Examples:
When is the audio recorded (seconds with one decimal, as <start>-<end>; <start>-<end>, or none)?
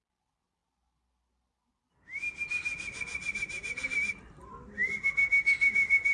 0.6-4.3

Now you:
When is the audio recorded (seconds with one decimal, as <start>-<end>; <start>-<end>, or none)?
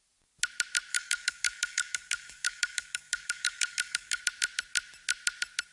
0.0-0.9; 4.2-5.7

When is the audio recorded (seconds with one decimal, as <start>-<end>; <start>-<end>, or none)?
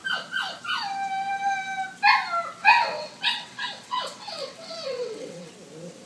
0.0-2.6; 5.5-6.1